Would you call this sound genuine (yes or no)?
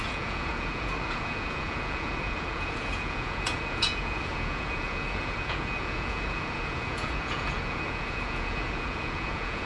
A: no